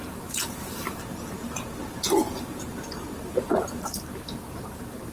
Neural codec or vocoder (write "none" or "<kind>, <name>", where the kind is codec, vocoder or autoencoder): vocoder, BigVGAN v2